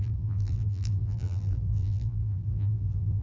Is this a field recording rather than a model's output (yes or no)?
no